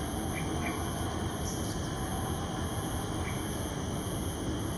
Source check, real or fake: real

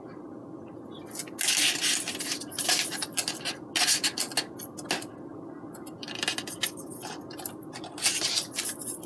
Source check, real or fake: real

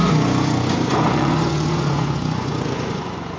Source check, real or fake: fake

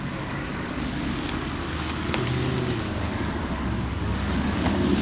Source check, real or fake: fake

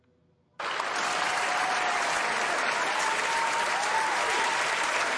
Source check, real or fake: real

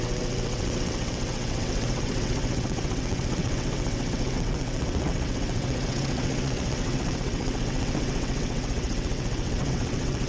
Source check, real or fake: fake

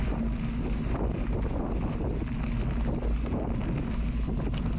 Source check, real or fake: real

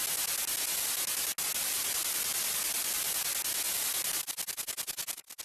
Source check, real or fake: real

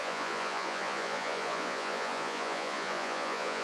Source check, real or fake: fake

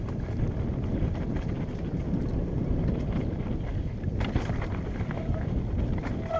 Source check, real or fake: real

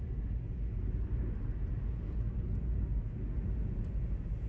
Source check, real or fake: real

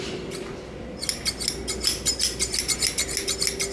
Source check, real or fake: real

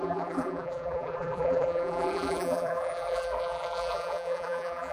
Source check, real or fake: fake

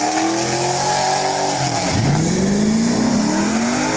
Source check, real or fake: real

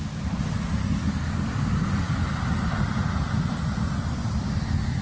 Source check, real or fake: real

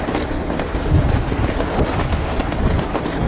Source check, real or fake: real